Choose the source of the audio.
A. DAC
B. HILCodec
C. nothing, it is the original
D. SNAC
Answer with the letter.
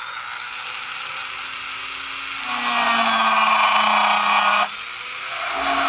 C